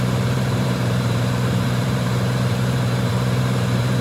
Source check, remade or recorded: remade